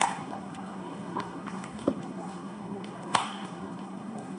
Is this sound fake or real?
fake